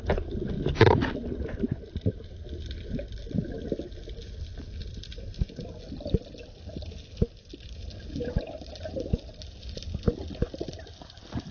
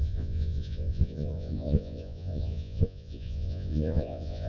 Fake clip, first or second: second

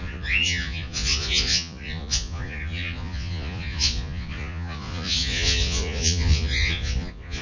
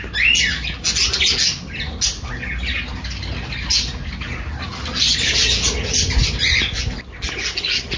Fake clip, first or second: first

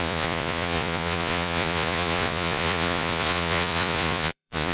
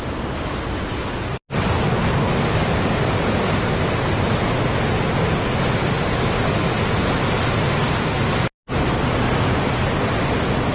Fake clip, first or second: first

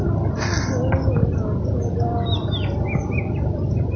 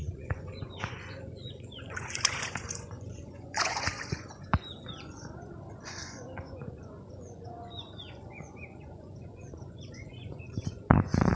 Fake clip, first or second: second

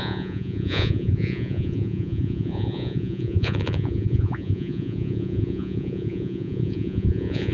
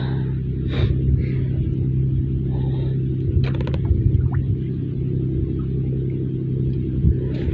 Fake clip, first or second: first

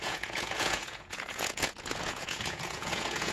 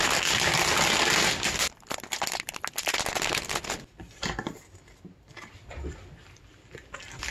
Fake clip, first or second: first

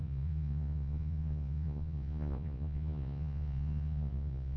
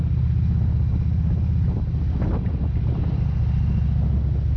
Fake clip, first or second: first